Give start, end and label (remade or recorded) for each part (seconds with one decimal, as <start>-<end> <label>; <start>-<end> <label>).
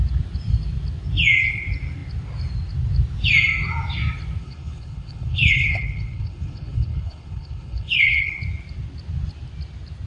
0.0-4.4 recorded; 4.4-8.4 remade; 8.4-10.1 recorded